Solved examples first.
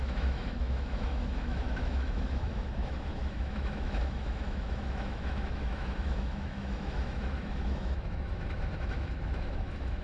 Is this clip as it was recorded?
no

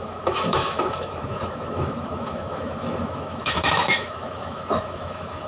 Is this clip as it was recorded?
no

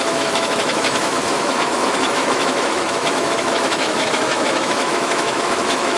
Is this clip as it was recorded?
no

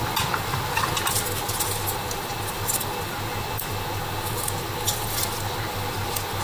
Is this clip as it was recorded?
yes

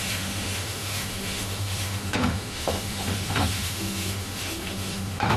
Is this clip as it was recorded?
no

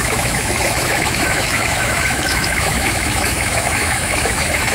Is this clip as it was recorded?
no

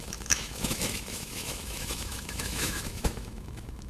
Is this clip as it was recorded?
no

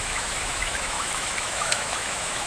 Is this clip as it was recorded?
no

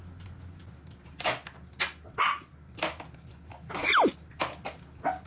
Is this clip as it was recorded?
yes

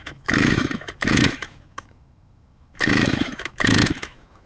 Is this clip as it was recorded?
no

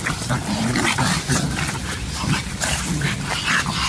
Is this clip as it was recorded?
yes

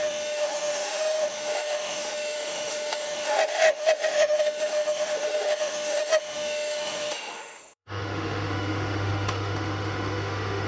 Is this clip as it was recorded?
no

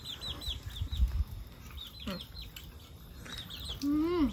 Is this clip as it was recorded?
yes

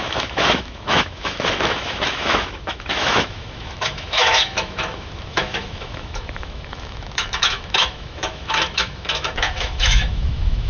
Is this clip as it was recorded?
no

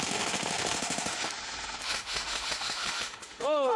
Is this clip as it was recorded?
no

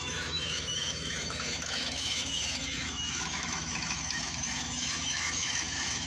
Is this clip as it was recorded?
no